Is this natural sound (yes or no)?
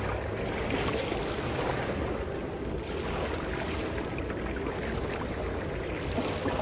yes